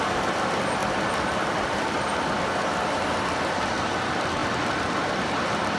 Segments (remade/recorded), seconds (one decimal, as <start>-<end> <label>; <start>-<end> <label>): 0.0-5.8 recorded